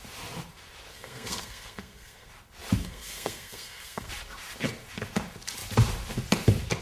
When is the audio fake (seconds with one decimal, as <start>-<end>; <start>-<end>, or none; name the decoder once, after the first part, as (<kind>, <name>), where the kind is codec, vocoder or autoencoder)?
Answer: 0.9-2.3 (codec, SNAC); 2.8-4.1